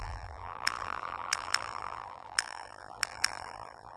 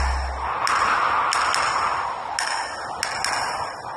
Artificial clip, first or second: first